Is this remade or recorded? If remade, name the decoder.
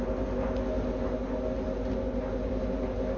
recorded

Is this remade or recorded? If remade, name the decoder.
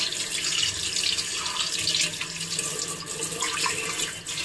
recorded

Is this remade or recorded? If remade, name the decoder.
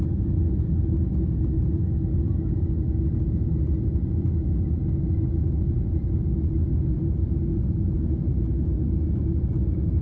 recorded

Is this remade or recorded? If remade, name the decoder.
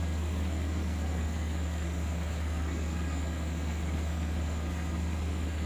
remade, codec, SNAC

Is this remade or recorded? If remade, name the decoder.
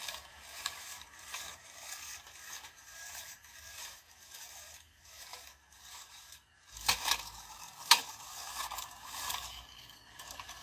remade, codec, DAC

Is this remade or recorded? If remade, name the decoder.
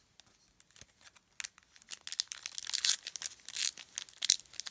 recorded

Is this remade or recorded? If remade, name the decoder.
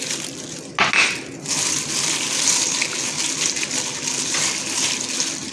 recorded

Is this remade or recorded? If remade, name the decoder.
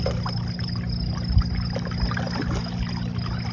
recorded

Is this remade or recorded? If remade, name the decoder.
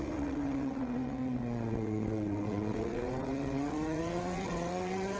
remade, vocoder, WaveNeXt